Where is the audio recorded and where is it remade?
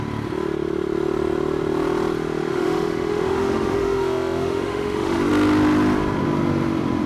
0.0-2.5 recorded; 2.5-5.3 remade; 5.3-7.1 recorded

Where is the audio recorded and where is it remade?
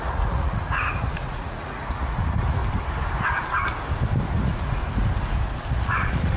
0.0-2.6 remade; 2.6-4.3 recorded; 4.3-4.8 remade; 4.8-5.7 recorded; 5.7-6.4 remade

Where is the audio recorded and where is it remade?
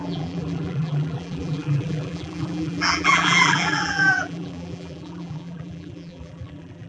0.0-6.9 remade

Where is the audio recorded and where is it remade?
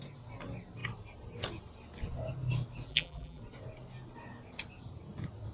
0.0-2.9 recorded; 2.9-3.4 remade; 3.4-5.5 recorded